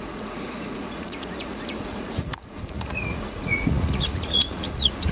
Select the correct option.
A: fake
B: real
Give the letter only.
A